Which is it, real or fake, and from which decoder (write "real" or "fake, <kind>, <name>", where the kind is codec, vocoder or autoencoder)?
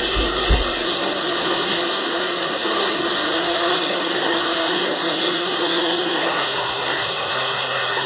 fake, codec, SNAC